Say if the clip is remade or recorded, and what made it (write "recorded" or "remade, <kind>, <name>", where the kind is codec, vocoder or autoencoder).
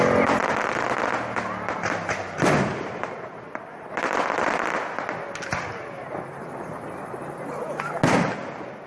recorded